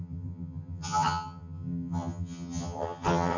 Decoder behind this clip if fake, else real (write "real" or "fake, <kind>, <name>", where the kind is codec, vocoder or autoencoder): fake, vocoder, HiFi-GAN